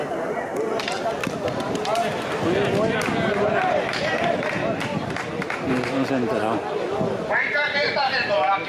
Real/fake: real